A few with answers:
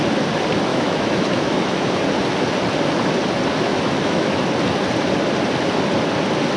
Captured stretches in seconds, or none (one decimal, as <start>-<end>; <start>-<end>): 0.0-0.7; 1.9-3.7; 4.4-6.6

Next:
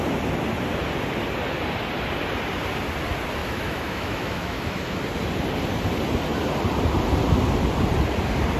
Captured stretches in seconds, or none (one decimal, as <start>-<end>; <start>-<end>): 0.0-3.4; 5.0-8.6

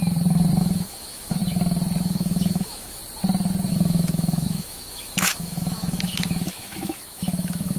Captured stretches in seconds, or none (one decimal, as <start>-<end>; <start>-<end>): 0.0-0.6; 1.4-2.0; 3.0-3.7

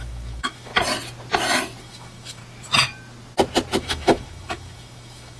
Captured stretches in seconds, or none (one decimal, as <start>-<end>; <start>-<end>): 0.7-1.8; 2.4-3.8

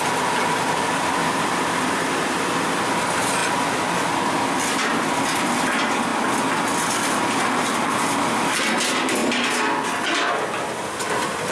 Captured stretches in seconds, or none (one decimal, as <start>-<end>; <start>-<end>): 0.0-11.5

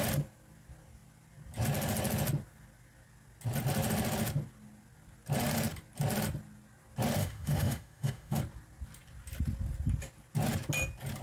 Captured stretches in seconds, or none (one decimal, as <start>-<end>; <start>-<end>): 0.0-7.2; 8.4-11.2

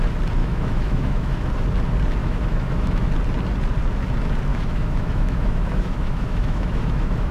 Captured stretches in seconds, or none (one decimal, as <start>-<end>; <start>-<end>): 0.0-0.4; 1.5-2.2; 3.1-4.5

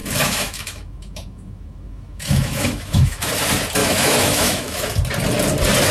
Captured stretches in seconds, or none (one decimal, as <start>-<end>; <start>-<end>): 3.3-3.8; 4.9-5.9